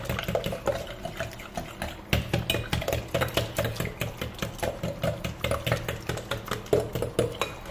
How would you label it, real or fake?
real